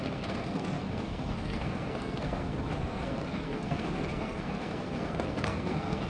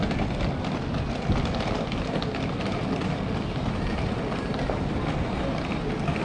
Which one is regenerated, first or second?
first